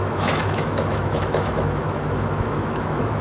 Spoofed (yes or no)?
yes